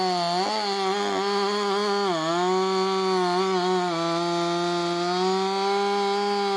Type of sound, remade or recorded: recorded